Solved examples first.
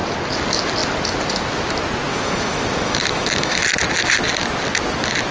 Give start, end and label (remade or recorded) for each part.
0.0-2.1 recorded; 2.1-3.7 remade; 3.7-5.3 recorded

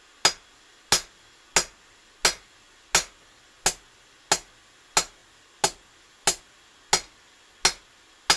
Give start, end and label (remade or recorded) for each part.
0.0-8.4 recorded

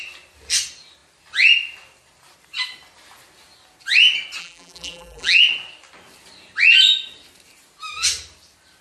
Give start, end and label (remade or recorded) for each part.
0.0-4.4 recorded; 4.4-5.4 remade; 5.4-8.8 recorded

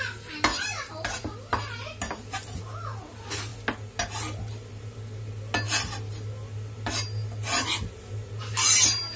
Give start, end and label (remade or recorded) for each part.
0.0-0.5 recorded; 0.5-1.2 remade; 1.2-9.2 recorded

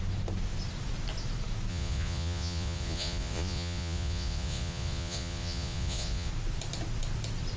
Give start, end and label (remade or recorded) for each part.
0.0-1.7 recorded; 1.7-6.3 remade; 6.3-7.6 recorded

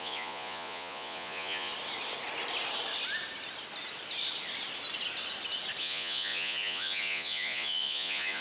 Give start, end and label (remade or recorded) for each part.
0.0-1.7 remade; 1.7-5.8 recorded; 5.8-8.4 remade